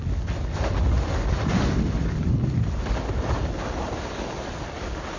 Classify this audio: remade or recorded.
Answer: recorded